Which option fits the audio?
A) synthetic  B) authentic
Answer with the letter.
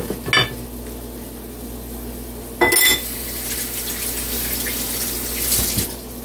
B